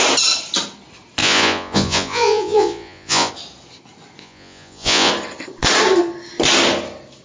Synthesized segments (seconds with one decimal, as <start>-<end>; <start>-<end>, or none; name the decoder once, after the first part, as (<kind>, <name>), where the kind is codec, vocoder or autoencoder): 1.2-3.3 (vocoder, Vocos); 4.2-5.1